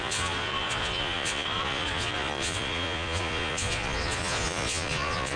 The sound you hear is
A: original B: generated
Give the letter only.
B